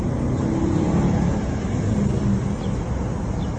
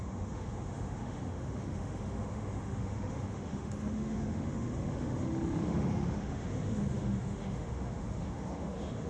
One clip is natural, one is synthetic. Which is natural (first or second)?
first